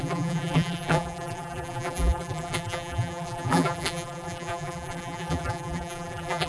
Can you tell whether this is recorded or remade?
remade